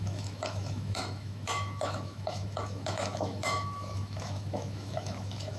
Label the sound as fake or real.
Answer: fake